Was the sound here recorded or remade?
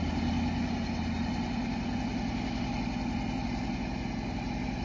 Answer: recorded